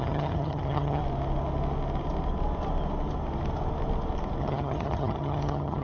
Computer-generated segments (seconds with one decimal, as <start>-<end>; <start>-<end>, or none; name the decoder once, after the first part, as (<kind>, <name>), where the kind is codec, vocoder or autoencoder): 0.0-1.0 (vocoder, HiFi-GAN); 4.4-5.8